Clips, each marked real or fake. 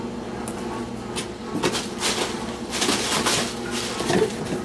real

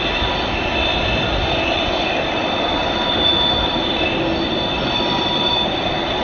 real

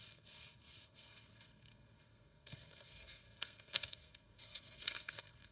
fake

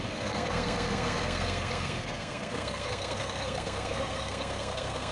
fake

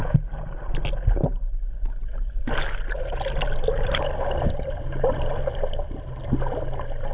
real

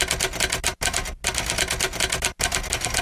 real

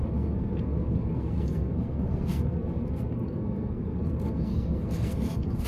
fake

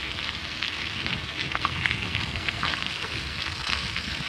fake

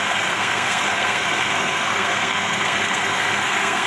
fake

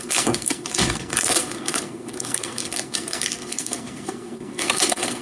fake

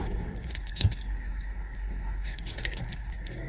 fake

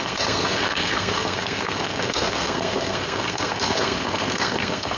fake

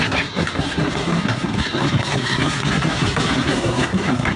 fake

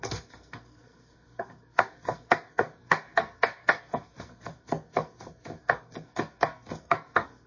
fake